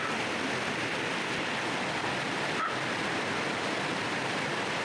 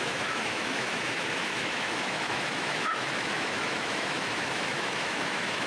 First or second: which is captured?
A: first